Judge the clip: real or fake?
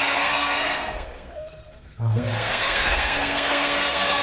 fake